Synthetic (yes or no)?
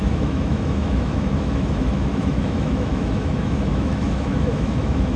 yes